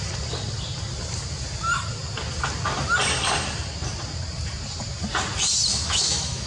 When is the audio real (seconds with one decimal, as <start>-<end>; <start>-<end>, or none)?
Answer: 0.0-5.7